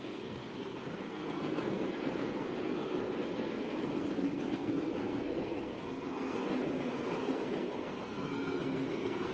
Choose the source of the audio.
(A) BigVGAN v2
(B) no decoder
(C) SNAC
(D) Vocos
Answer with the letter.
C